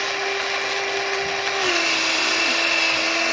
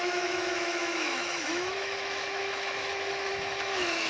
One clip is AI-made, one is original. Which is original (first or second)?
first